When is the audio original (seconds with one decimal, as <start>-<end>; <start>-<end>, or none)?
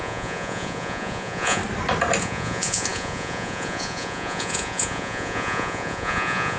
1.6-2.2